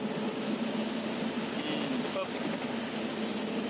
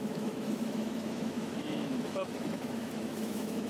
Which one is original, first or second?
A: first